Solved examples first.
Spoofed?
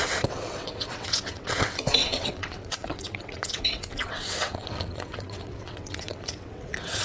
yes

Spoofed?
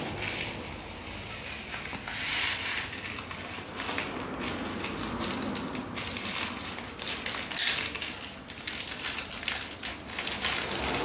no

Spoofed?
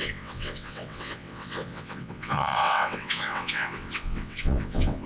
yes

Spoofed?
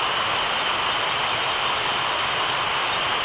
no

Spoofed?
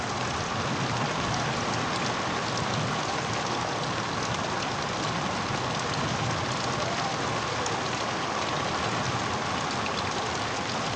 no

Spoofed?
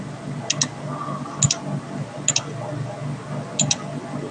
no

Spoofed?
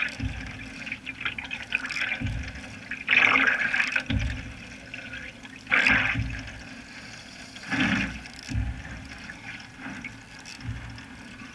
no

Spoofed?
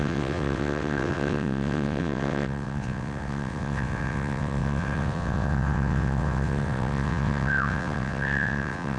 yes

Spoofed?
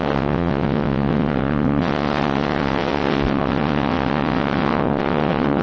yes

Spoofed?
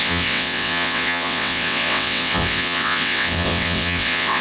yes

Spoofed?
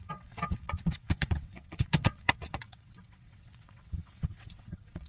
yes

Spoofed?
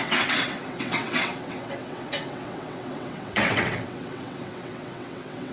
yes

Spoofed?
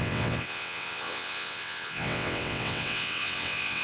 yes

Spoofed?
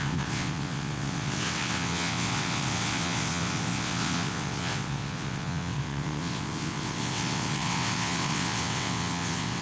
yes